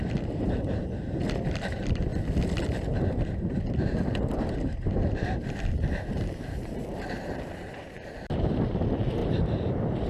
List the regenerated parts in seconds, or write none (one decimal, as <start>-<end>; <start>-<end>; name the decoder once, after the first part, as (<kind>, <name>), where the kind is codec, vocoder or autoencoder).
0.0-2.1 (vocoder, BigVGAN v2); 3.7-9.2